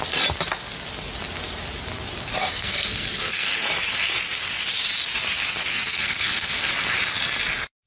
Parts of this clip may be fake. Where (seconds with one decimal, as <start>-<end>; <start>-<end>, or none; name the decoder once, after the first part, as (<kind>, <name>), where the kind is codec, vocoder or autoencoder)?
2.4-3.5 (codec, SNAC); 5.7-6.7